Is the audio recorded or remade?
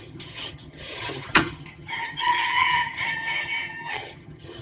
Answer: remade